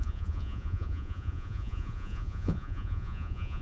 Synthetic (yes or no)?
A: yes